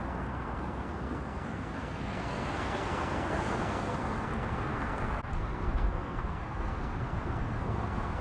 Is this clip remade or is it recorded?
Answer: remade